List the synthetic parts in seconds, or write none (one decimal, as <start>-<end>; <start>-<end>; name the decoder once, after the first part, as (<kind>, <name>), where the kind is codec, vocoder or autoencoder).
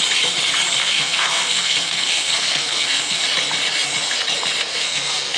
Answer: 0.8-3.2 (codec, SNAC); 4.7-5.4